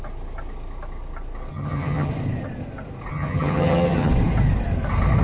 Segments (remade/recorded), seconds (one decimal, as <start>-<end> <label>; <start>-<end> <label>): 0.0-1.5 recorded; 1.5-2.1 remade; 2.1-3.1 recorded; 3.1-4.1 remade; 4.1-5.2 recorded

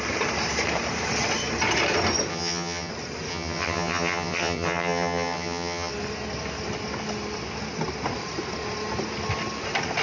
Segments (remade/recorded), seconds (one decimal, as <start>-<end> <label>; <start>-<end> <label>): 0.0-2.3 recorded; 2.3-2.9 remade; 2.9-3.3 recorded; 3.3-5.9 remade; 5.9-10.0 recorded

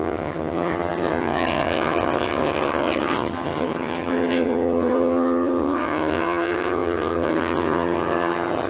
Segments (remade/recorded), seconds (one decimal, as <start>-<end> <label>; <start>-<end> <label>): 0.0-8.7 remade

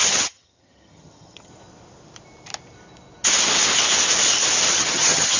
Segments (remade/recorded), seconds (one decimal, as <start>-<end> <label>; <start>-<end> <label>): 0.0-1.5 remade; 1.5-4.7 recorded; 4.7-5.4 remade